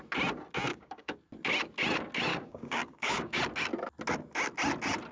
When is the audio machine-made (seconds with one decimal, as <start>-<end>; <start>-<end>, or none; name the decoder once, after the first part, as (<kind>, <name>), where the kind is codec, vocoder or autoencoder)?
0.7-1.2 (codec, DAC); 2.3-3.4